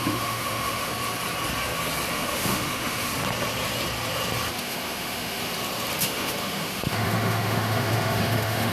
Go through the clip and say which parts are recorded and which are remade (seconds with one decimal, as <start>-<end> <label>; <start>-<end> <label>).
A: 0.0-0.9 remade; 0.9-2.1 recorded; 2.1-3.1 remade; 3.1-4.6 recorded; 4.6-5.4 remade; 5.4-6.0 recorded; 6.0-8.7 remade